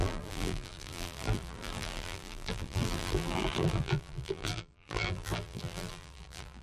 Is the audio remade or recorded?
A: remade